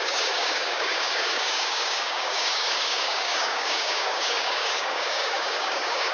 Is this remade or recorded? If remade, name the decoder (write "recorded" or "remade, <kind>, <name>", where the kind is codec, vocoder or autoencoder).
remade, codec, DAC